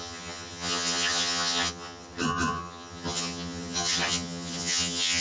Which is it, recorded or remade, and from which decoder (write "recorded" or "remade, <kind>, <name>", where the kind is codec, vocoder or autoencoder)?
remade, vocoder, HiFi-GAN